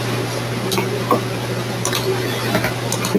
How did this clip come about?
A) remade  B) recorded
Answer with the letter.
B